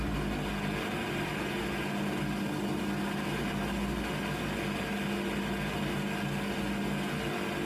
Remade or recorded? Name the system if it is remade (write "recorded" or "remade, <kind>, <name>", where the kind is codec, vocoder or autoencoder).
recorded